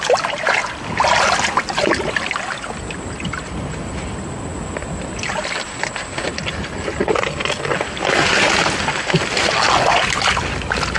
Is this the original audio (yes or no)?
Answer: yes